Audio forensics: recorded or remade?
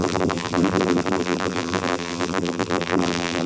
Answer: remade